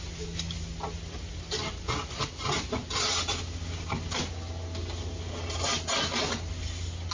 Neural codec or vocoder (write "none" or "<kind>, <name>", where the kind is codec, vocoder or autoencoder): none